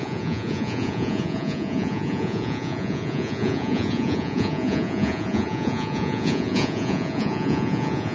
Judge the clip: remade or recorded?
remade